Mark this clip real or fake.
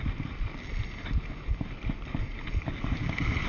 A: real